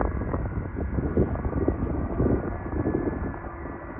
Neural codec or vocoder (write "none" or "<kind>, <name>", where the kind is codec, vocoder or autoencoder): vocoder, BigVGAN v2